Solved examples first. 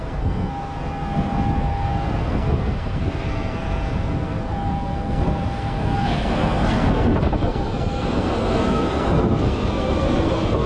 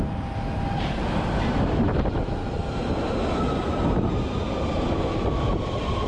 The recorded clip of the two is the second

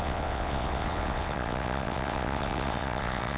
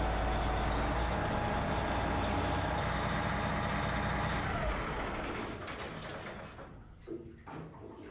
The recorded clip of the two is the second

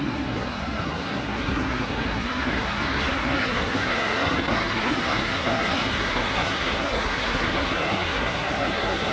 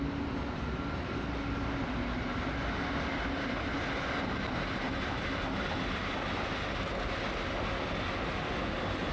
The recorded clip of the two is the second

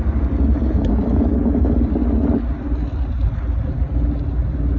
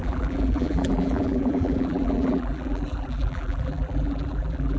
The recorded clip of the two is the first